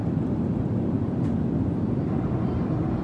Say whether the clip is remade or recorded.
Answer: recorded